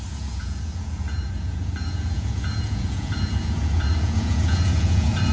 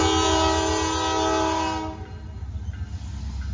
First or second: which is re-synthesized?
first